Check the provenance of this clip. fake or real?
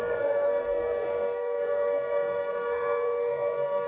fake